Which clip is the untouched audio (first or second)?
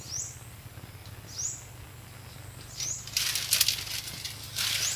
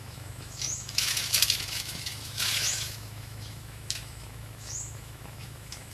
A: first